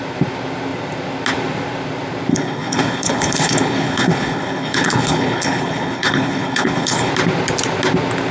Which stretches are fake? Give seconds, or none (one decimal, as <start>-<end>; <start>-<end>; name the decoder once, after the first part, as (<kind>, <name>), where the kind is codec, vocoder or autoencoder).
2.3-7.1 (codec, HILCodec)